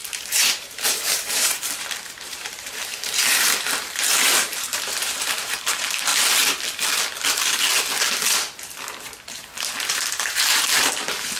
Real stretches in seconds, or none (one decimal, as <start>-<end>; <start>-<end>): 6.1-10.1